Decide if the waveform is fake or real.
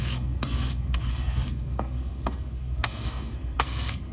fake